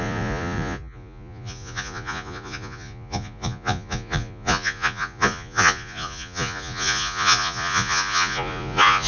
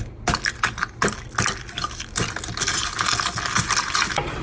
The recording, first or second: second